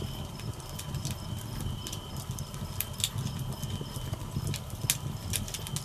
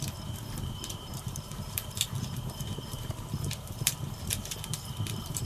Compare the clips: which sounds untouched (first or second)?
first